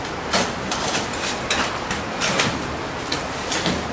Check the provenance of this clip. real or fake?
real